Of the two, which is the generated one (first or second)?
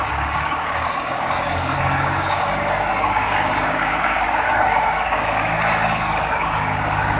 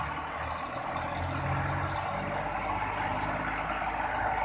first